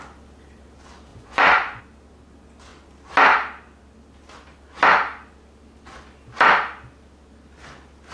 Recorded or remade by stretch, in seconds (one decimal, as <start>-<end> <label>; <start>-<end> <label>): 0.0-1.1 recorded; 1.1-1.8 remade; 1.8-8.1 recorded